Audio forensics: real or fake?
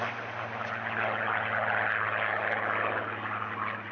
real